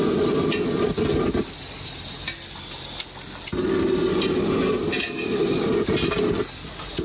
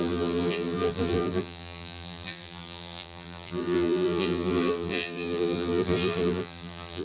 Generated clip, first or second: second